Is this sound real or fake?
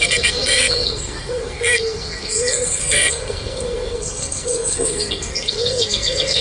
fake